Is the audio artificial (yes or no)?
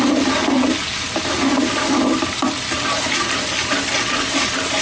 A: no